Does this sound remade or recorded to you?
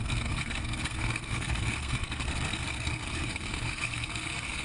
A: remade